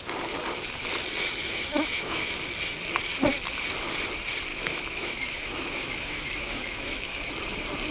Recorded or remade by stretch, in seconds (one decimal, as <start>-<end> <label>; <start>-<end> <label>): 0.0-1.4 recorded; 1.4-2.3 remade; 2.3-4.5 recorded; 4.5-7.3 remade; 7.3-7.9 recorded